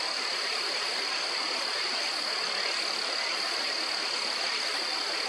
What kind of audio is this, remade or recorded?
recorded